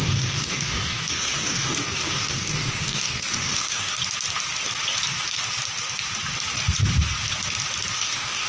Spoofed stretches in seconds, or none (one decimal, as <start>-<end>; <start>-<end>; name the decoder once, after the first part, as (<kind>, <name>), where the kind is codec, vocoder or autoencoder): 0.0-4.0 (codec, DAC); 7.9-8.5